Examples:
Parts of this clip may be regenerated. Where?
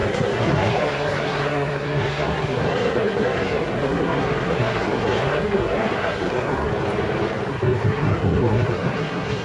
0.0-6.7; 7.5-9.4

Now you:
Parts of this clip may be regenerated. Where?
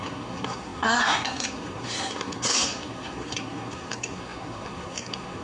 0.0-5.4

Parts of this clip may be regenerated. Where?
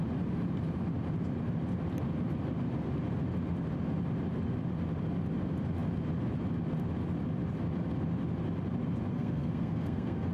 9.1-10.3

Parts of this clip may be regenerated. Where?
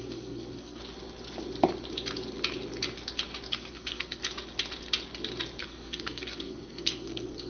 0.0-0.8; 3.5-4.2; 5.6-7.5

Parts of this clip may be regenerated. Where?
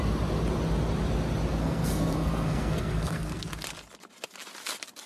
1.6-3.4